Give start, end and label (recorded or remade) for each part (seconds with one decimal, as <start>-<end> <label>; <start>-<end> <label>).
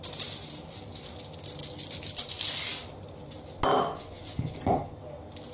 0.0-3.9 recorded; 3.9-5.0 remade; 5.0-5.5 recorded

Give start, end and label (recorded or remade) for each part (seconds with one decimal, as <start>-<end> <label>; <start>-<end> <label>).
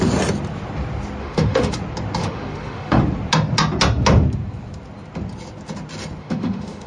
0.0-1.2 recorded; 1.2-1.7 remade; 1.7-2.2 recorded; 2.2-3.0 remade; 3.0-6.2 recorded; 6.2-6.9 remade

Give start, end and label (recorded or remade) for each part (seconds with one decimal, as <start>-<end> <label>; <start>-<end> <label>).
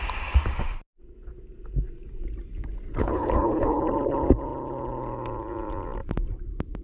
0.0-3.0 recorded; 3.0-3.8 remade; 3.8-6.8 recorded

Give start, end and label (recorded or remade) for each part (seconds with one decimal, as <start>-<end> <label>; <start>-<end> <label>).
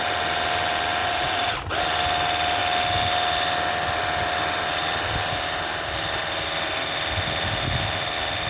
0.0-1.0 recorded; 1.0-1.7 remade; 1.7-8.5 recorded